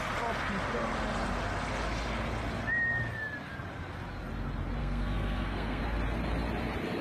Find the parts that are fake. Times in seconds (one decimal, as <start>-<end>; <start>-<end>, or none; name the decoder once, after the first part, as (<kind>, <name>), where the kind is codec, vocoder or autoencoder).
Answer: 4.8-5.8 (codec, SNAC)